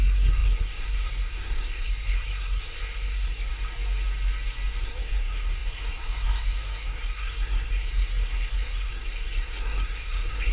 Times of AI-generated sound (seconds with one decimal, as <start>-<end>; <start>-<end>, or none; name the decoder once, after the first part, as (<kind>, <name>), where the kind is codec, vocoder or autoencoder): 0.0-3.5 (codec, SNAC); 4.8-10.5